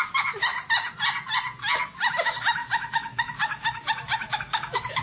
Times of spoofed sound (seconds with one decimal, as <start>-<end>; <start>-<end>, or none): 0.0-0.5; 1.8-5.0